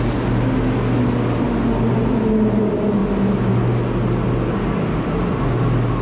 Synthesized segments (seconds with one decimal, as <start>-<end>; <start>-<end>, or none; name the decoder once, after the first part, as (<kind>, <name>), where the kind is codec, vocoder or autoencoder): none